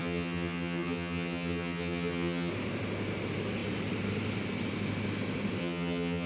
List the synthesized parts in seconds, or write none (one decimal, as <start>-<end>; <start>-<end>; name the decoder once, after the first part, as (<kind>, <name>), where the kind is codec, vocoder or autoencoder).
0.0-2.5 (vocoder, HiFi-GAN); 5.6-6.3